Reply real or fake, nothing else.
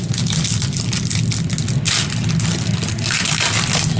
real